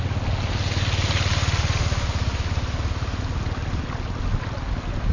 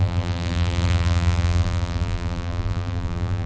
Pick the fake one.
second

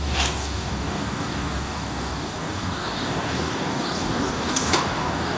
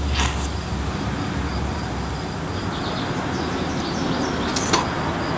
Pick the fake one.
first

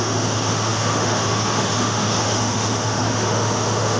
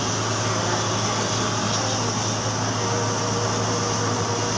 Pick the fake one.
first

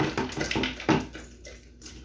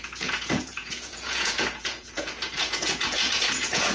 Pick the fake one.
second